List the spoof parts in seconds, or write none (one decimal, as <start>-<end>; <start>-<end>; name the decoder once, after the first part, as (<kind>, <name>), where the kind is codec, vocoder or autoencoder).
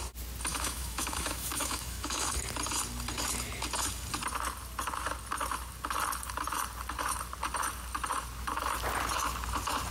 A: 0.5-2.3 (autoencoder, DAC-VAE)